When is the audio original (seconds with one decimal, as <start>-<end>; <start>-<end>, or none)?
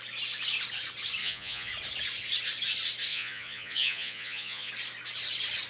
0.0-1.2; 1.7-3.1; 4.7-5.7